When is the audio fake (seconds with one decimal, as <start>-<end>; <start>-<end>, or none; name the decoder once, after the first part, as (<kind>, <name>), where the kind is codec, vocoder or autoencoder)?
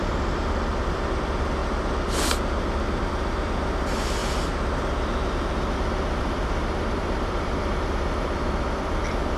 0.0-1.6 (vocoder, BigVGAN v2); 3.0-4.2; 6.2-9.4